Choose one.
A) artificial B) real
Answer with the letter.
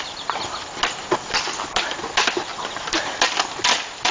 B